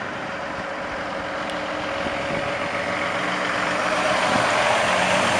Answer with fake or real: real